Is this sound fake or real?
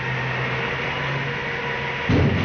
real